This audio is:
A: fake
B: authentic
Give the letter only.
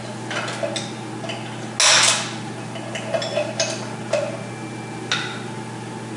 B